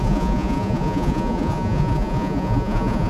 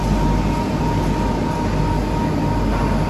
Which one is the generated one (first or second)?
first